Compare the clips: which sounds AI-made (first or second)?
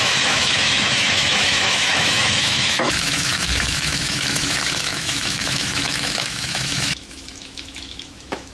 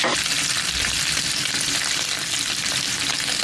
first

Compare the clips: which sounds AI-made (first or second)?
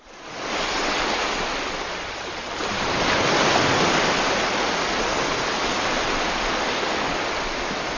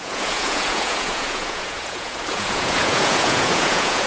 second